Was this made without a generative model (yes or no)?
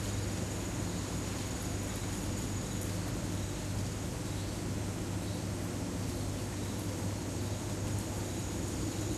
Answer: yes